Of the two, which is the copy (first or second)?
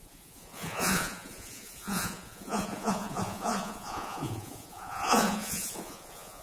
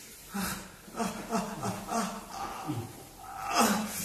first